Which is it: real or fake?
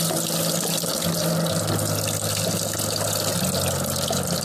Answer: real